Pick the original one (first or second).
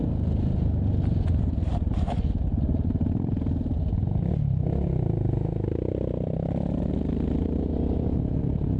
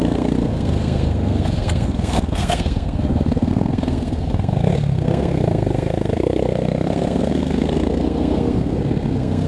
first